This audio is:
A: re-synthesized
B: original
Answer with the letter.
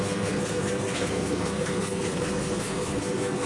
A